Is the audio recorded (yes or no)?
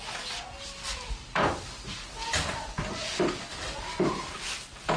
yes